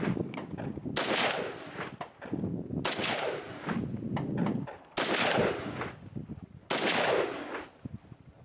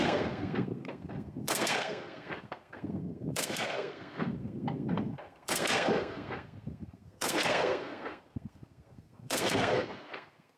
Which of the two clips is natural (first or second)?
first